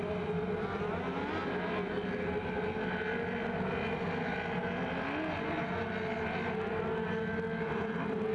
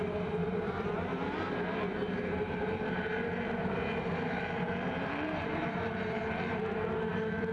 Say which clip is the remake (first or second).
second